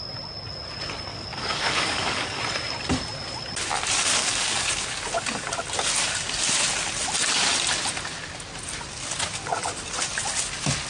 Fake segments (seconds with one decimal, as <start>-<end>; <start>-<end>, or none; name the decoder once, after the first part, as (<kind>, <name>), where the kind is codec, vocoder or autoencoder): 1.1-2.4 (codec, DAC); 4.2-5.0